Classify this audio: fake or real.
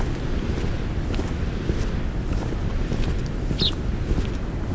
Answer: real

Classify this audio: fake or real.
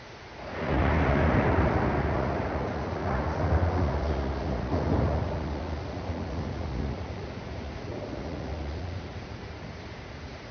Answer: fake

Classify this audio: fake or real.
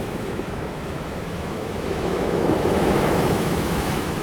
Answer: fake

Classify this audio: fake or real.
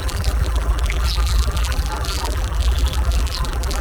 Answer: fake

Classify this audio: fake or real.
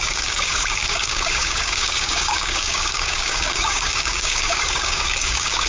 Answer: fake